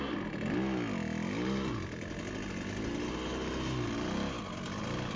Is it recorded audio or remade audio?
recorded